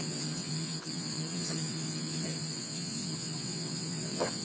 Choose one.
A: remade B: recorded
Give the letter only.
A